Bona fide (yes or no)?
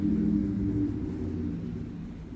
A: yes